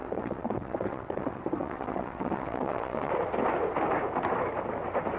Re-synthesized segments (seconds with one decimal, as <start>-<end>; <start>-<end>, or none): 0.0-3.1